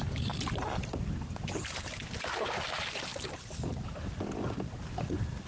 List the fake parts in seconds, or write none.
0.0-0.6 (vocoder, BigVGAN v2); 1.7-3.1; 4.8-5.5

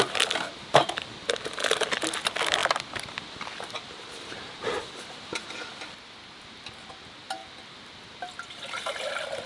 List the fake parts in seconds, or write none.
2.6-4.9 (vocoder, BigVGAN v2); 7.4-9.5

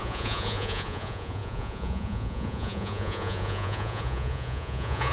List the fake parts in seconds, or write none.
0.0-5.1 (vocoder, Vocos)

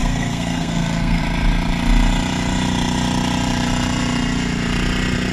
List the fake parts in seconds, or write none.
0.0-1.2 (codec, SNAC)